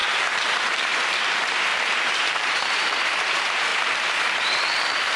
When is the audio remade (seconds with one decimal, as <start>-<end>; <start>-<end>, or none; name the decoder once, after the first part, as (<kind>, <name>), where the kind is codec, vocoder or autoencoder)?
0.6-5.2 (vocoder, BigVGAN v2)

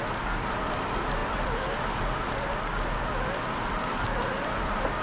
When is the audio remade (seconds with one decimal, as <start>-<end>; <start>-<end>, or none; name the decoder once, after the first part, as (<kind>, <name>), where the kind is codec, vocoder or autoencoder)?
none